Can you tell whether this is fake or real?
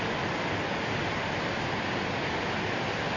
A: real